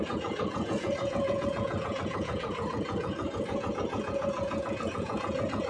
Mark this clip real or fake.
fake